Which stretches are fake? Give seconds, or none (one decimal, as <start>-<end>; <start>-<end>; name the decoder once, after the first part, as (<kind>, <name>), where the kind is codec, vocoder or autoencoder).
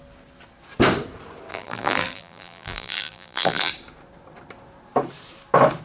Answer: 1.5-3.7 (vocoder, BigVGAN v2)